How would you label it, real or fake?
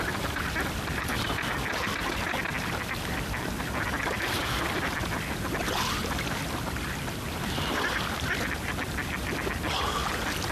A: real